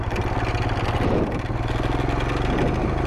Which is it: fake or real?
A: real